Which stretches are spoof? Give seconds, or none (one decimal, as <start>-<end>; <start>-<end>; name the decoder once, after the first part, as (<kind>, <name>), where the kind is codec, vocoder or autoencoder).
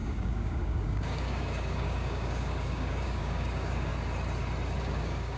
0.0-3.9 (codec, DAC); 4.8-5.4